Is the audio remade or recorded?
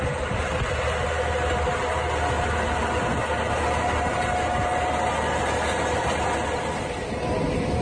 recorded